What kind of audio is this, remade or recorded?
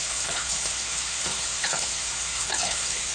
remade